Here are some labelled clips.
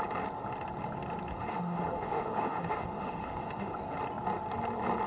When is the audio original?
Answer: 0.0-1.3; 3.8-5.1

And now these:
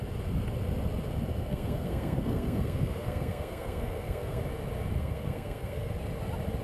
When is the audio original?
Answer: 0.0-1.3; 4.4-5.0; 5.9-6.6